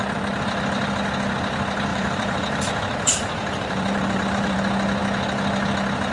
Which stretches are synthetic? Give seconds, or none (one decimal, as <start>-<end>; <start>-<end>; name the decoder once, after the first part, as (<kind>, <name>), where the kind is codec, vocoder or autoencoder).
1.9-4.6 (vocoder, BigVGAN v2)